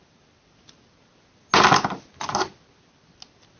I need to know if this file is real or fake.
real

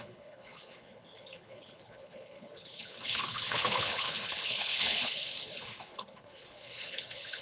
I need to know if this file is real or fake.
fake